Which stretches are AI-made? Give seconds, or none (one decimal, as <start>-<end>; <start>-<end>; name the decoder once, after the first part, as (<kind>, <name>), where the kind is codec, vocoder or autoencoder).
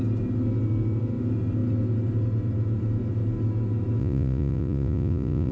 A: 4.0-5.5 (vocoder, Vocos)